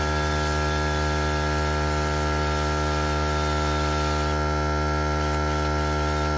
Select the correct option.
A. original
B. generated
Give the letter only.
A